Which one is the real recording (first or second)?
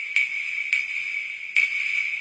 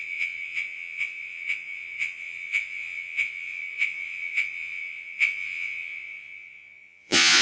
first